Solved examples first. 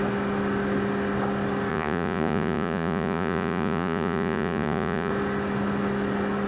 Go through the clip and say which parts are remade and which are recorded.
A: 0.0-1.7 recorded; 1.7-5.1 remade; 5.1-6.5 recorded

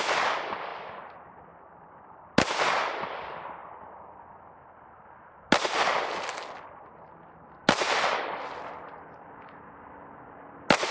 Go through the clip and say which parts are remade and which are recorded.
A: 0.0-10.9 recorded